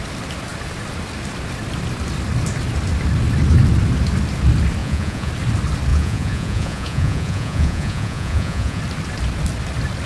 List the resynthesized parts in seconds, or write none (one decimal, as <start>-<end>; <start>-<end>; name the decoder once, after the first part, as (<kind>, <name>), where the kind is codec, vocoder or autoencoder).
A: 4.8-5.3 (vocoder, Vocos); 5.9-8.8